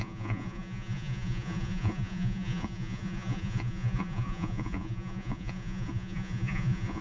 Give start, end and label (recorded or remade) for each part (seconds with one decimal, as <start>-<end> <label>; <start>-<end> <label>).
0.0-7.0 remade